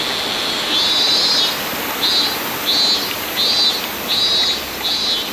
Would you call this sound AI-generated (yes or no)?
no